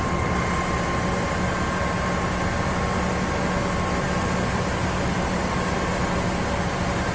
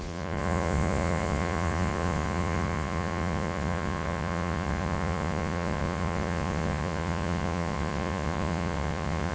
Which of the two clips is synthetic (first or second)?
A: second